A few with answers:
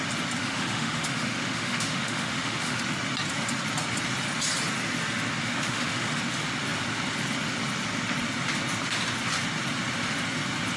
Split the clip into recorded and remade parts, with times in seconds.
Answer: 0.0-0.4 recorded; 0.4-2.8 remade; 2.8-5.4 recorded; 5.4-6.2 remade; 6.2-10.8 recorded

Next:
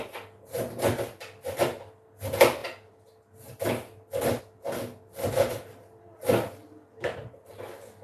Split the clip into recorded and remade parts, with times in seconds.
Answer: 0.0-8.0 recorded

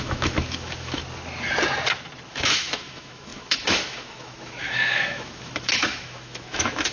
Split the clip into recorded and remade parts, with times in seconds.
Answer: 0.0-1.0 remade; 1.0-2.3 recorded; 2.3-6.9 remade

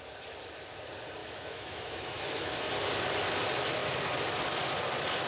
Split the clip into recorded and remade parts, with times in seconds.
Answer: 0.0-1.2 recorded; 1.2-2.7 remade; 2.7-5.3 recorded

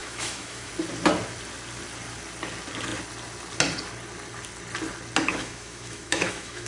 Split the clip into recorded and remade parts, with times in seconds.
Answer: 0.0-0.7 remade; 0.7-5.3 recorded; 5.3-6.7 remade

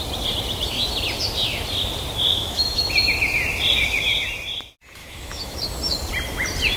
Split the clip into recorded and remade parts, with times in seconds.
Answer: 0.0-2.3 recorded; 2.3-2.9 remade; 2.9-5.0 recorded; 5.0-5.6 remade; 5.6-6.8 recorded

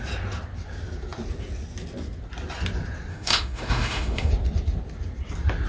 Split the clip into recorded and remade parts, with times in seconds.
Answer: 0.0-3.1 recorded; 3.1-4.3 remade; 4.3-5.7 recorded